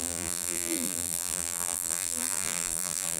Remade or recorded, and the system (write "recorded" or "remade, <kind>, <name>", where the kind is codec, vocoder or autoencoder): remade, vocoder, BigVGAN v2